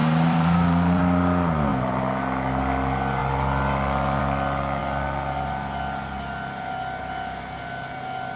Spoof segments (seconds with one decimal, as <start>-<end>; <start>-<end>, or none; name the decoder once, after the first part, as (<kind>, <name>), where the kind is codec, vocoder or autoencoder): 0.0-1.0 (vocoder, BigVGAN v2); 1.7-2.2